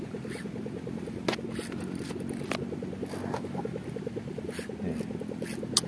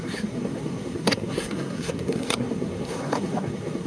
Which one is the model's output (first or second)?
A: second